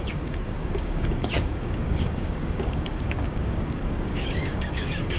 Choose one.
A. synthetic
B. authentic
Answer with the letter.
A